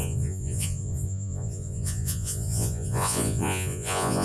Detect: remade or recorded remade